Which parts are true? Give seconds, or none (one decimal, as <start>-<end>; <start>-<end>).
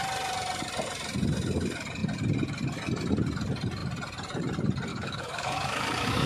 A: 0.0-4.9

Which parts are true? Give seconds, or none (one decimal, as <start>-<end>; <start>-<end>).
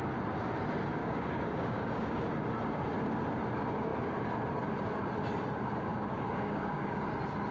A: 0.0-1.0; 2.3-5.9; 7.0-7.5